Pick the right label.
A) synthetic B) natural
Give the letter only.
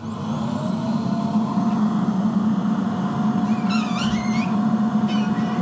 B